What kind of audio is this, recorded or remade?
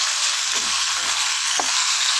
remade